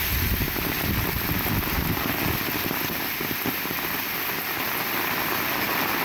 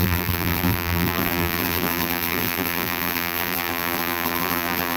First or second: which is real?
first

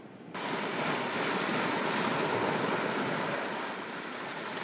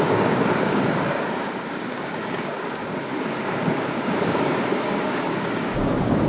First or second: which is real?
first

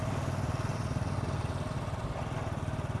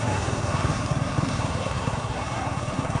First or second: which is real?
first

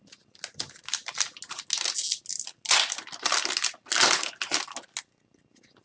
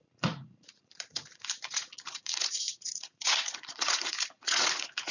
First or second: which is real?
first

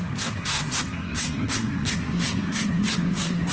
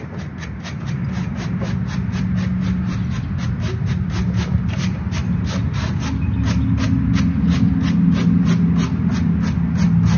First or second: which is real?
second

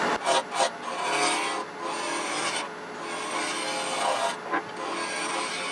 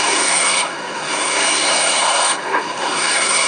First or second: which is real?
first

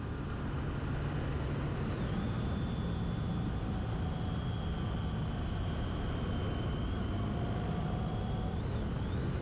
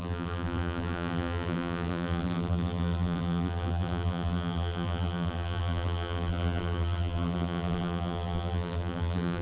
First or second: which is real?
first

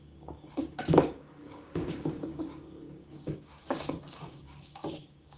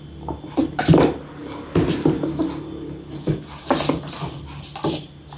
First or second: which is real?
second